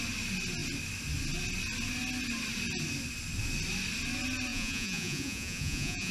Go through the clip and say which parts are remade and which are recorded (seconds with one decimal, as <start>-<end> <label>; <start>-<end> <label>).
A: 0.0-4.5 recorded; 4.5-6.1 remade